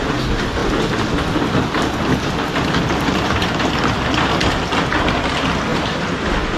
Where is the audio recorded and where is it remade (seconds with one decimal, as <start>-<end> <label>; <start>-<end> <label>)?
0.0-0.6 recorded; 0.6-4.6 remade; 4.6-5.7 recorded; 5.7-6.6 remade